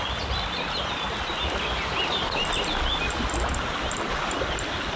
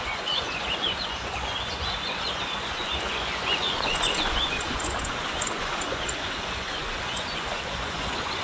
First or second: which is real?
first